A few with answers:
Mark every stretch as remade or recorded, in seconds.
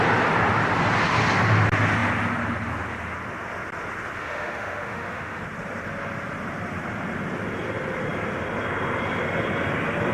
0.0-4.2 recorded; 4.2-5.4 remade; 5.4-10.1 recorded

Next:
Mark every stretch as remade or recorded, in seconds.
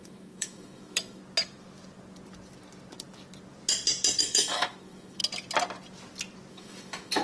0.0-1.2 remade; 1.2-4.2 recorded; 4.2-5.2 remade; 5.2-6.5 recorded; 6.5-7.2 remade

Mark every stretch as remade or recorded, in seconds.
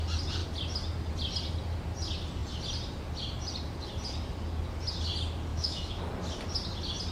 0.0-5.5 recorded; 5.5-6.0 remade; 6.0-7.1 recorded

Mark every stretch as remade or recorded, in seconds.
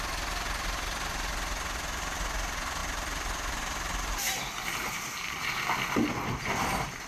0.0-7.1 recorded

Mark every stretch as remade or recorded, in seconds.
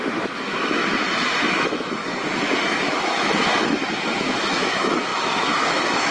0.0-0.8 remade; 0.8-1.5 recorded; 1.5-2.0 remade; 2.0-2.6 recorded; 2.6-6.1 remade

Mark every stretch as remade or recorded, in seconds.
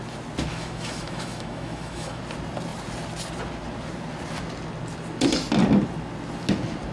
0.0-0.5 recorded; 0.5-2.2 remade; 2.2-6.9 recorded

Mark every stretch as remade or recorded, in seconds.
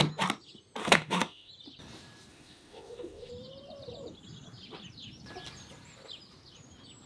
0.0-0.8 recorded; 0.8-1.5 remade; 1.5-2.3 recorded; 2.3-3.3 remade; 3.3-7.1 recorded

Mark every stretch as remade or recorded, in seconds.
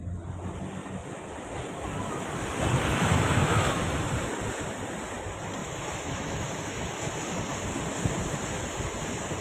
0.0-2.9 recorded; 2.9-3.8 remade; 3.8-5.6 recorded; 5.6-7.1 remade; 7.1-9.4 recorded